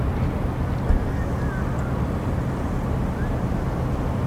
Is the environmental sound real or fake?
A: real